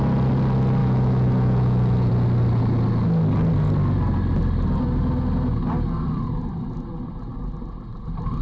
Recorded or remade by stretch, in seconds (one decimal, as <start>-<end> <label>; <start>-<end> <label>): 0.0-0.8 recorded; 0.8-2.1 remade; 2.1-8.4 recorded